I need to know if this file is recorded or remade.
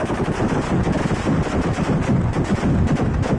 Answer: recorded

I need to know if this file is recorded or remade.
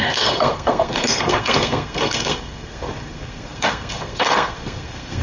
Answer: remade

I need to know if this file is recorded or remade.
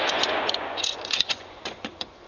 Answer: remade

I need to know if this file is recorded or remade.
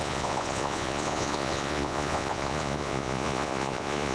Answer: remade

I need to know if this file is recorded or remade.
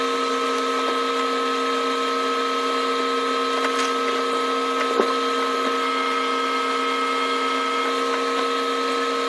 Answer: recorded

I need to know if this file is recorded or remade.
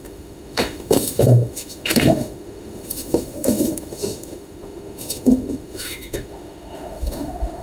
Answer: remade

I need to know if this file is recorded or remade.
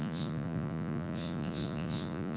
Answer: remade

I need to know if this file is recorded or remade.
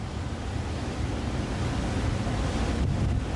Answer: recorded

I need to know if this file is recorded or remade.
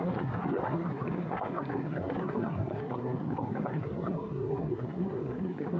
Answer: remade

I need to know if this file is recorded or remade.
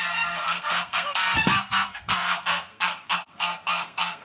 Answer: remade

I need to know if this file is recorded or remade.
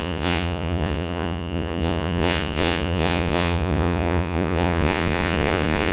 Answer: remade